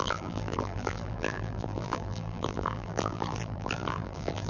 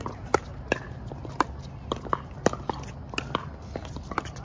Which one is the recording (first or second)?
second